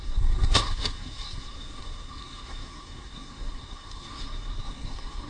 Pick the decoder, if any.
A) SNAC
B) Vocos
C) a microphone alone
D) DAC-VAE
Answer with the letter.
A